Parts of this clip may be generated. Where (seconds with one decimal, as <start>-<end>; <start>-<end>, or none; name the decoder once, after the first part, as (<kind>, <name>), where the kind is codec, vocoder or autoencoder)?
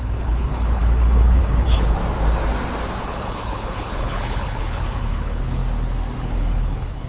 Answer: 0.0-2.0 (codec, HILCodec); 3.0-5.6; 6.2-7.1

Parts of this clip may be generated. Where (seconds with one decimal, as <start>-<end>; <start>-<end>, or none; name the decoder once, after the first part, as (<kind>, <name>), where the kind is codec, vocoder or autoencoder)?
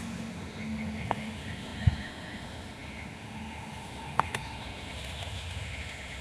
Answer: 0.0-6.2 (autoencoder, DAC-VAE)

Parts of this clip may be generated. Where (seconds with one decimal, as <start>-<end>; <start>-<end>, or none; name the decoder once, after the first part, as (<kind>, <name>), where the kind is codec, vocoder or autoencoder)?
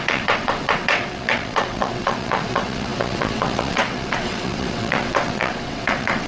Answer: 0.0-6.3 (vocoder, WaveNeXt)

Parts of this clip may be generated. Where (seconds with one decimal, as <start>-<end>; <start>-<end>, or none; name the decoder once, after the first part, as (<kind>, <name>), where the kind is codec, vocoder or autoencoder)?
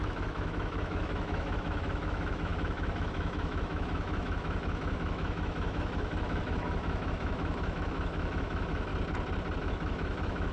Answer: 0.0-8.9 (autoencoder, DAC-VAE); 9.6-10.5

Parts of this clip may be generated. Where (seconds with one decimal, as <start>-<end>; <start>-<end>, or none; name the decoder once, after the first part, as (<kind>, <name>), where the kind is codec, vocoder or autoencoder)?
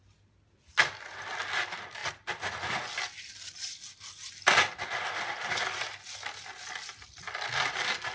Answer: none